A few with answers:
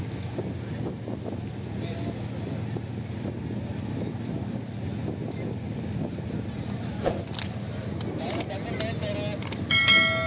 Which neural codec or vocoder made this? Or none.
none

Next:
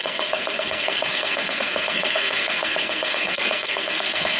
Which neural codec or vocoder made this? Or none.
codec, SNAC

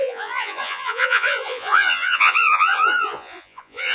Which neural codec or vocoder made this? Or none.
vocoder, Vocos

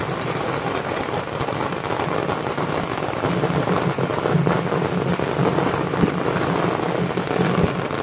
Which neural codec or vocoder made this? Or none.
none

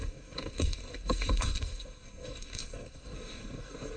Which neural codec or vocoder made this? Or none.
codec, SNAC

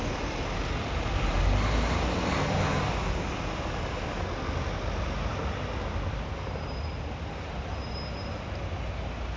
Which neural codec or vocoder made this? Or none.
none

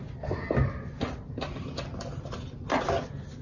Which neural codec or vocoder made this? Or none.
none